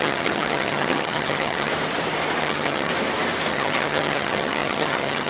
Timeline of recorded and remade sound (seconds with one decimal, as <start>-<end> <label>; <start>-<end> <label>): 0.0-1.7 remade; 1.7-2.4 recorded; 2.4-2.9 remade; 2.9-3.5 recorded; 3.5-5.3 remade